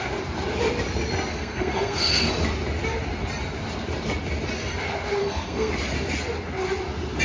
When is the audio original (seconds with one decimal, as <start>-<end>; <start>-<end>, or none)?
0.0-1.3; 2.3-5.2; 5.7-7.2